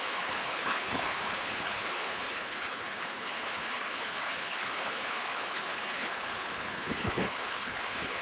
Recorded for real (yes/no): no